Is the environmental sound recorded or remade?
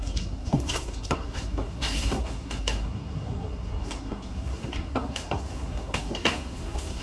remade